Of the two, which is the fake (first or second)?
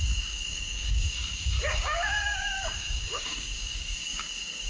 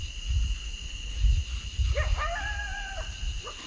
first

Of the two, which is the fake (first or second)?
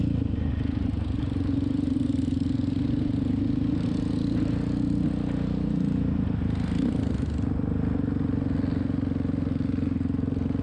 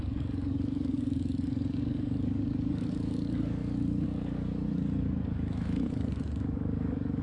second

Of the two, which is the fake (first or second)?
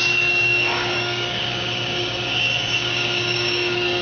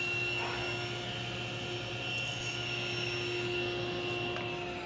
first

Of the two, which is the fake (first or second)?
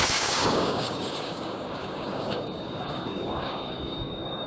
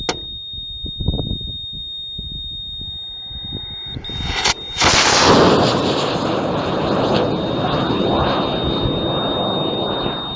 first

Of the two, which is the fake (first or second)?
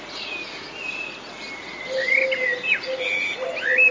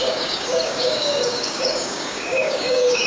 second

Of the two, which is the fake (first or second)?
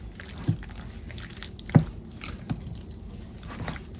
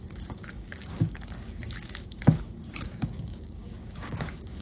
second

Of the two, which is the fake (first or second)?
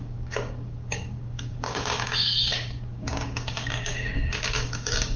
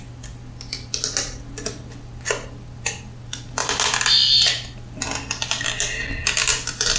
first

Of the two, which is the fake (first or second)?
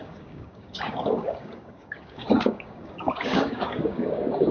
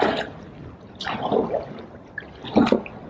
first